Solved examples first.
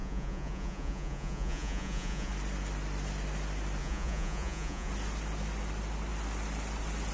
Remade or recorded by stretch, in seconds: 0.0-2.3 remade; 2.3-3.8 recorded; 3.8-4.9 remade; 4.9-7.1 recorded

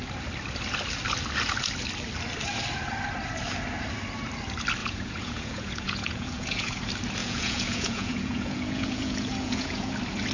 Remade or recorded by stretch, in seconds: 0.0-4.8 recorded; 4.8-6.8 remade; 6.8-7.2 recorded; 7.2-9.9 remade; 9.9-10.3 recorded